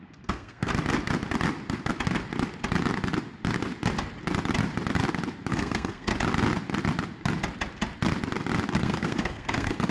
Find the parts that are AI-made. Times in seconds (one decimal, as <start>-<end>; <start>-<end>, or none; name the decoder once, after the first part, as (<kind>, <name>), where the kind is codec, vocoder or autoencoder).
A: 0.0-0.7 (codec, SNAC); 5.5-6.1; 8.8-9.9